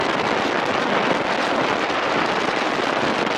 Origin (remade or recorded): recorded